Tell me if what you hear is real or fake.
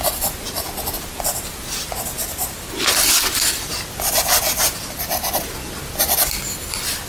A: real